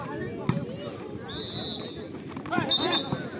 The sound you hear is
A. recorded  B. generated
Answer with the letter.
A